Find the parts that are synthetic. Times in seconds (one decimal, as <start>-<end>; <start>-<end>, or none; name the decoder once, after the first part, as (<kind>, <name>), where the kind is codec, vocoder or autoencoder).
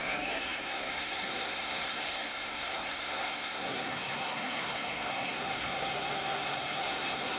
0.0-7.4 (codec, SNAC)